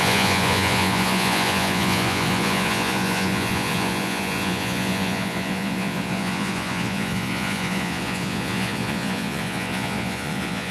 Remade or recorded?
remade